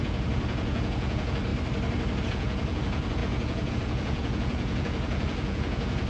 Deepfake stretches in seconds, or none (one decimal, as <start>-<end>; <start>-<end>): 0.0-1.5; 2.2-6.1